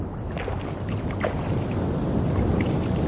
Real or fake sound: real